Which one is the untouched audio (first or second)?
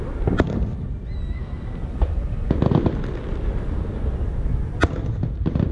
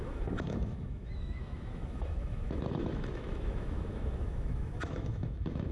first